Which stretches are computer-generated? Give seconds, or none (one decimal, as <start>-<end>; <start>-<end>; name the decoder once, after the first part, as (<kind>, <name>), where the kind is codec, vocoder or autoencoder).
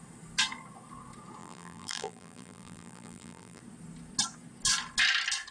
1.4-3.6 (vocoder, BigVGAN v2)